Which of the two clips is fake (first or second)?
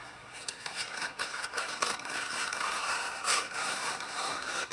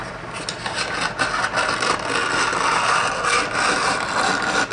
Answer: first